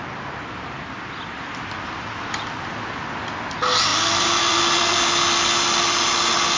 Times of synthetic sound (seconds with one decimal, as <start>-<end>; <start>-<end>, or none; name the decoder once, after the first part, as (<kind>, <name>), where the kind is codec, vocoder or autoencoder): none